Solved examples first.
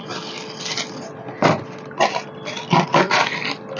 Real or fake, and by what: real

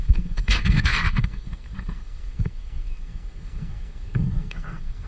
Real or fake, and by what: fake, codec, SNAC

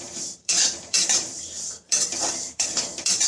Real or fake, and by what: fake, vocoder, BigVGAN v2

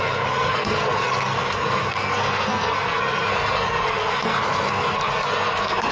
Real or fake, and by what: fake, codec, SNAC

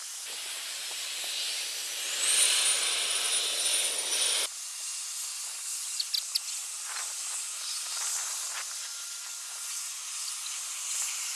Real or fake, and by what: real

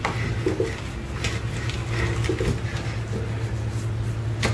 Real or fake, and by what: real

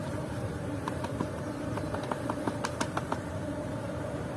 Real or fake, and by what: fake, vocoder, BigVGAN v2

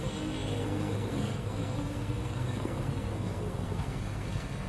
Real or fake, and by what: fake, codec, SNAC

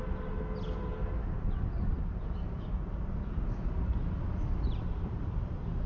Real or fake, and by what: real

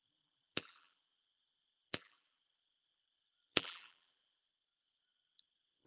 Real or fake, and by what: fake, vocoder, BigVGAN v2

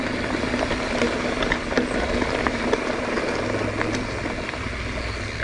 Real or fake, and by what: real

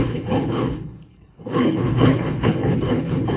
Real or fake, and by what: fake, codec, HILCodec